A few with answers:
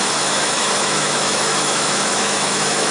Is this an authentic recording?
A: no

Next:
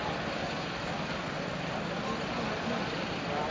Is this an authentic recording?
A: yes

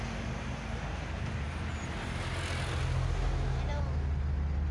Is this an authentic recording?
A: yes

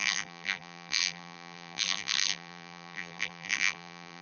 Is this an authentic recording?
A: no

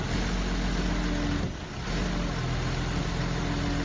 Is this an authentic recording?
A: yes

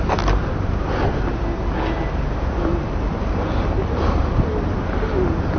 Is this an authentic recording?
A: yes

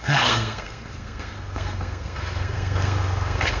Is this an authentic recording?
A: no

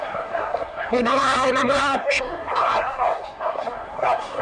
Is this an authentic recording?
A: no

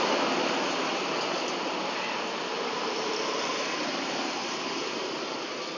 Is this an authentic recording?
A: no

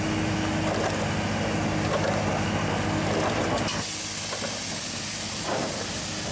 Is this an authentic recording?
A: yes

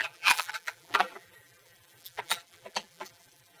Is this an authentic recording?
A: no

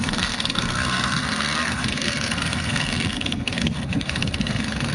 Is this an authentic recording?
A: no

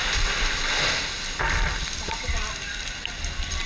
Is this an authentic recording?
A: yes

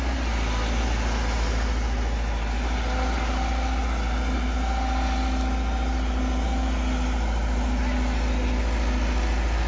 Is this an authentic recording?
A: yes